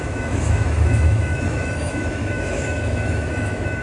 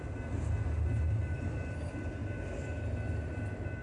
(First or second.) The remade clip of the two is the first